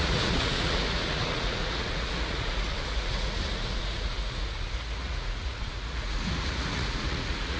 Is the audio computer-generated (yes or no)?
yes